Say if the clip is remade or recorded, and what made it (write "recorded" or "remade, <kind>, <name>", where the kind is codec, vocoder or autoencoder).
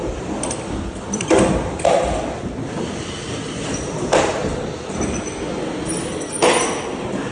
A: recorded